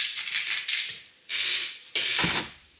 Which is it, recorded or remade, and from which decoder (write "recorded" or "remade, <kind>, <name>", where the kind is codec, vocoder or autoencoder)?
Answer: remade, vocoder, BigVGAN v2